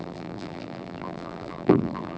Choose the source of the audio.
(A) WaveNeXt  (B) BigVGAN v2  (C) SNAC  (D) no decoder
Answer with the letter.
B